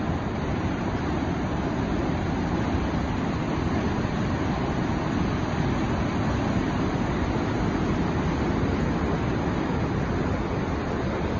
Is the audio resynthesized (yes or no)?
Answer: no